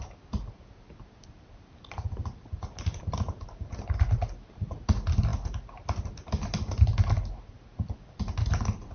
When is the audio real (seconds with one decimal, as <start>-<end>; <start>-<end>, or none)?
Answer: 0.0-8.9